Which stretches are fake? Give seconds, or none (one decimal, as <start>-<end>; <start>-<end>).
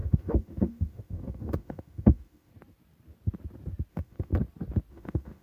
0.0-2.5; 3.9-4.3; 4.9-5.4